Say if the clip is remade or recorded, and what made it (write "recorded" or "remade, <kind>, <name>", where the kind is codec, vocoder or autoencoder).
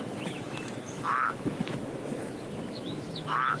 remade, autoencoder, DAC-VAE